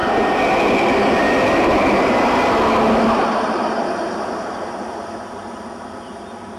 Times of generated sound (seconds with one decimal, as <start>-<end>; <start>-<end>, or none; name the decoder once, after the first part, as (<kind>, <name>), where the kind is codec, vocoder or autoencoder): none